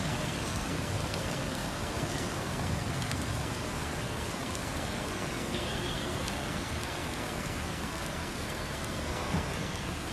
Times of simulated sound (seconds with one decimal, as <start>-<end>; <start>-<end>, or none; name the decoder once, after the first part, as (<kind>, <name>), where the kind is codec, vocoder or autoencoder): 0.0-10.1 (codec, SNAC)